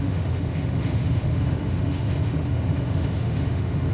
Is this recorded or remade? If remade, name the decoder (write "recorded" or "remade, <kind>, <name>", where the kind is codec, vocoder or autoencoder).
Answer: remade, autoencoder, DAC-VAE